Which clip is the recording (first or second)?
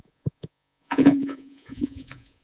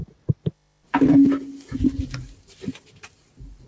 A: second